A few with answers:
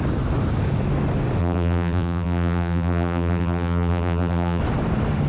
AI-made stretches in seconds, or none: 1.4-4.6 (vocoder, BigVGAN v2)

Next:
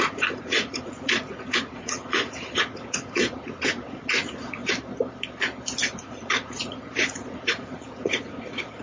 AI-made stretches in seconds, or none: 0.0-4.6 (vocoder, Vocos); 5.9-8.8

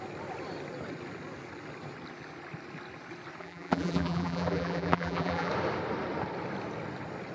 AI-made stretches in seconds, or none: 3.4-5.5 (vocoder, BigVGAN v2)

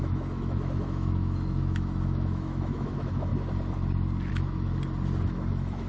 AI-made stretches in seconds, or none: 0.0-3.3 (autoencoder, DAC-VAE); 4.3-4.7; 5.5-5.9

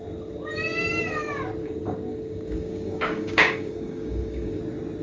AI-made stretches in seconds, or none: 1.6-4.6 (codec, DAC)